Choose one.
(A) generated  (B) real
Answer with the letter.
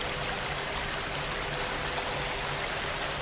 B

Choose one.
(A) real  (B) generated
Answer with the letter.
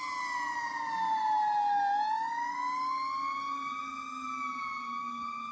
A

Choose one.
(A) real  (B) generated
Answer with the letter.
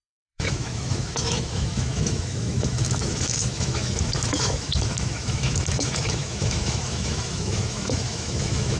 B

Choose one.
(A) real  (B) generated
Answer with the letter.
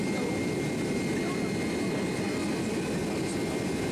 A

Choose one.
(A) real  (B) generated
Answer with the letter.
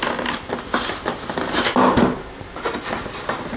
A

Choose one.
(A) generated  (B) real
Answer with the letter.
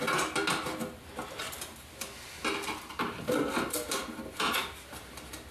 B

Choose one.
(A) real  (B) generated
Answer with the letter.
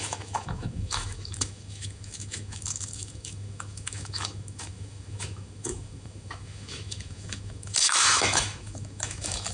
B